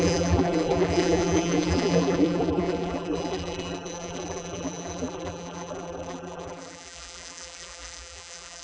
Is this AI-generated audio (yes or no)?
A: yes